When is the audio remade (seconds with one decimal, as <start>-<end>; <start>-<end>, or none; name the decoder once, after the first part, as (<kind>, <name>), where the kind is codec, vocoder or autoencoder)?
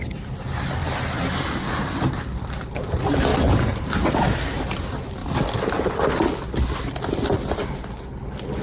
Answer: 3.3-3.9 (vocoder, BigVGAN v2)